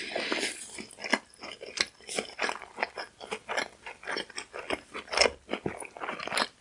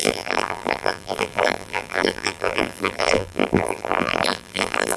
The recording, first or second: first